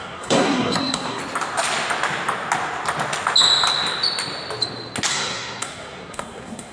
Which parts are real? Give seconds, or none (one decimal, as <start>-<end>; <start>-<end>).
1.2-5.1

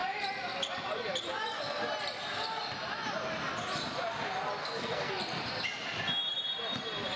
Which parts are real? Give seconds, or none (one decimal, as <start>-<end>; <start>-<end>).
0.0-4.6; 5.1-7.2